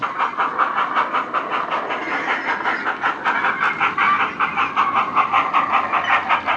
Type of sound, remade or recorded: recorded